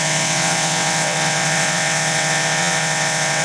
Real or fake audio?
fake